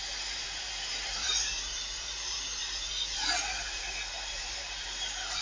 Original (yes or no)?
no